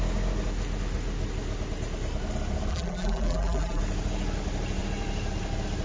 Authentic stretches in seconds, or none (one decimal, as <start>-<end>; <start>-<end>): 0.0-2.7; 3.8-5.8